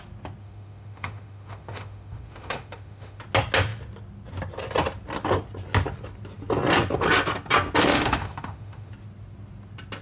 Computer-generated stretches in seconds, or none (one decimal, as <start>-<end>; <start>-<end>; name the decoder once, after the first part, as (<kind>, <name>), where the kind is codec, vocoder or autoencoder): 0.4-3.2 (autoencoder, DAC-VAE); 7.8-8.9